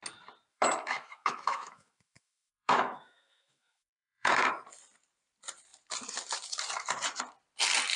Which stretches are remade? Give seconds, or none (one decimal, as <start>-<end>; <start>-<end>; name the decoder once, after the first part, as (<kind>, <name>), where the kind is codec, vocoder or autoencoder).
0.5-4.5 (autoencoder, DAC-VAE)